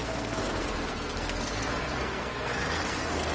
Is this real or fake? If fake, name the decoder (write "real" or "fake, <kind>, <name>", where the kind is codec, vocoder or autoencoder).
fake, codec, SNAC